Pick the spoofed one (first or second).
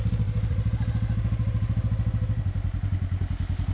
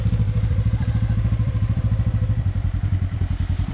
second